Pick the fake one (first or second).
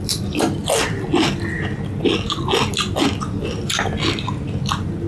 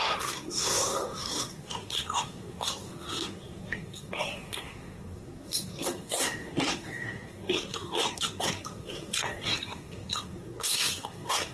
second